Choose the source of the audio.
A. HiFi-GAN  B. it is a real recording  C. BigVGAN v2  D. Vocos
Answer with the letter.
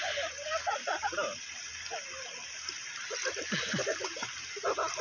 B